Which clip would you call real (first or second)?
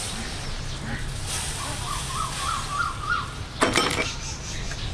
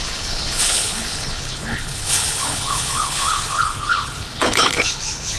first